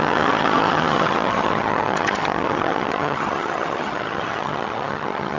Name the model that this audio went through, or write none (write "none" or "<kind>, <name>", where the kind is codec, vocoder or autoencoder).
vocoder, HiFi-GAN